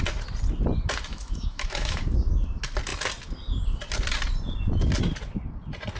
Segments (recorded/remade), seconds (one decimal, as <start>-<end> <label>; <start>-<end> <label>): 0.0-1.1 recorded; 1.1-2.0 remade; 2.0-6.0 recorded